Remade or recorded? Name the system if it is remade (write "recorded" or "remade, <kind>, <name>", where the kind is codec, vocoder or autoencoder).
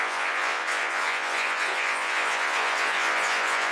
remade, vocoder, Vocos